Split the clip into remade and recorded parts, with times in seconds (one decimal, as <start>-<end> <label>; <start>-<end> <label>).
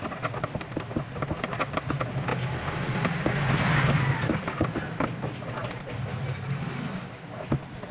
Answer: 0.0-7.9 recorded